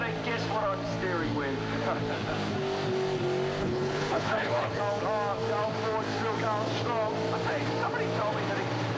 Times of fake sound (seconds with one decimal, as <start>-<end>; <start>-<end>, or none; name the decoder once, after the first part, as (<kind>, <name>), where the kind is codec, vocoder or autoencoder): 3.6-4.8 (codec, HILCodec)